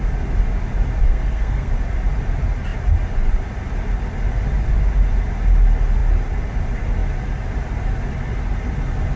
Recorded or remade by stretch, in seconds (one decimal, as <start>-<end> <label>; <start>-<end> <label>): 0.0-1.0 recorded; 1.0-1.7 remade; 1.7-9.2 recorded